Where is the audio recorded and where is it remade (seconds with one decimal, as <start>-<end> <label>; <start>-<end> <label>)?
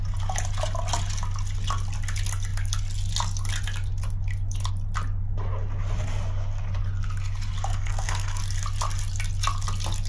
0.0-7.7 recorded; 7.7-8.4 remade; 8.4-10.1 recorded